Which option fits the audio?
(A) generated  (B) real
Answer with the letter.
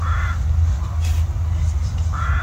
B